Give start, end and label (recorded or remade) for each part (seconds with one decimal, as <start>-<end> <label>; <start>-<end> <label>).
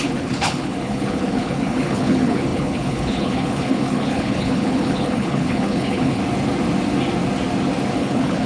0.0-6.2 remade; 6.2-7.9 recorded; 7.9-8.5 remade